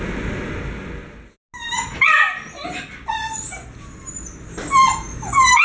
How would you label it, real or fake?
real